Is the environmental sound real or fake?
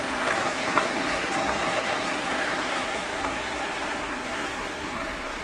fake